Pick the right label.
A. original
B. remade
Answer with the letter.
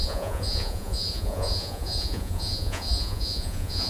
B